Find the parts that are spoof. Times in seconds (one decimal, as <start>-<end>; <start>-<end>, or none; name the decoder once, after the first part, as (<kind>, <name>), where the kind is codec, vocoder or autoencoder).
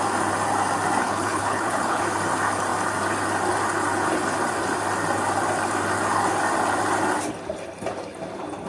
1.0-2.0 (codec, HILCodec)